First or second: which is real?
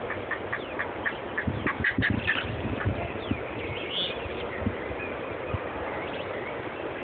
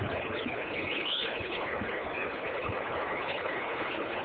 first